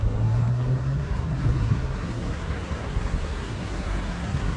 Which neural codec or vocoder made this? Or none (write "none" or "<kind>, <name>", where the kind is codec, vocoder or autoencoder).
codec, SNAC